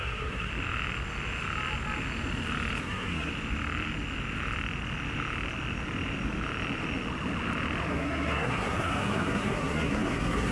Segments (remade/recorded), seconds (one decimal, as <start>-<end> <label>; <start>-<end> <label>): 0.0-0.5 remade; 0.5-2.8 recorded; 2.8-3.3 remade; 3.3-7.9 recorded; 7.9-10.5 remade

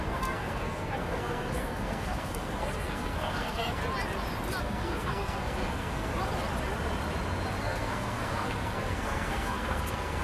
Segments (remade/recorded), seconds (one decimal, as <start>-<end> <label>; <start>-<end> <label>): 0.0-3.8 remade; 3.8-4.6 recorded; 4.6-6.1 remade; 6.1-7.6 recorded; 7.6-10.2 remade

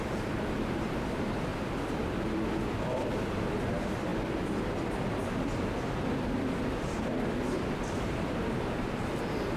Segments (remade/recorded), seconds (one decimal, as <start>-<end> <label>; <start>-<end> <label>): 0.0-1.5 remade; 1.5-2.8 recorded; 2.8-4.1 remade; 4.1-8.8 recorded; 8.8-9.6 remade

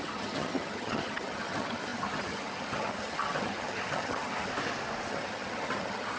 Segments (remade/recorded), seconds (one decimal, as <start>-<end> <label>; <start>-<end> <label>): 0.0-4.5 remade; 4.5-5.1 recorded; 5.1-6.2 remade

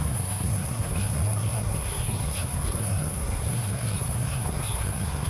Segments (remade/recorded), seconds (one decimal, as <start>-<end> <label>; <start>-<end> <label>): 0.0-5.3 remade

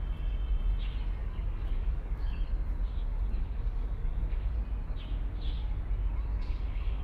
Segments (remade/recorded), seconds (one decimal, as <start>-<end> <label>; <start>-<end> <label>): 0.0-1.2 recorded; 1.2-2.4 remade; 2.4-3.1 recorded; 3.1-4.5 remade; 4.5-6.3 recorded; 6.3-7.0 remade

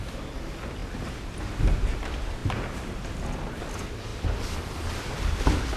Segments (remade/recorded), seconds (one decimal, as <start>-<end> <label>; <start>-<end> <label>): 0.0-5.8 recorded

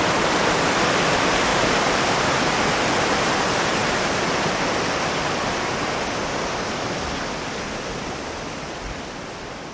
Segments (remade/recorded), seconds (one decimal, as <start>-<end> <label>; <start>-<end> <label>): 0.0-1.5 recorded; 1.5-3.3 remade; 3.3-9.7 recorded